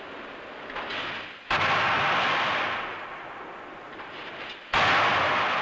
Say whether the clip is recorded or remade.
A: recorded